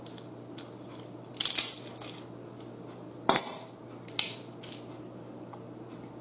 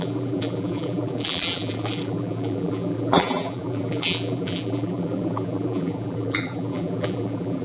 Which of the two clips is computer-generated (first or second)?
second